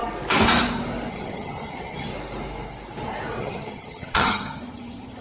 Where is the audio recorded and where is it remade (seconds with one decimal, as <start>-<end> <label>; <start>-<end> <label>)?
0.0-1.1 recorded; 1.1-2.1 remade; 2.1-3.4 recorded; 3.4-5.2 remade